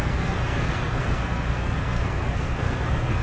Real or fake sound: fake